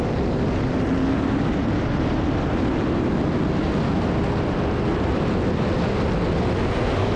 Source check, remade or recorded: recorded